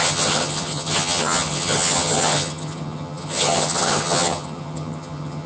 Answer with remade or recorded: remade